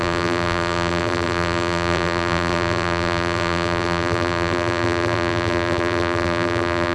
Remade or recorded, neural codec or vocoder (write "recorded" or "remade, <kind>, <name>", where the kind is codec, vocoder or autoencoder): remade, vocoder, BigVGAN v2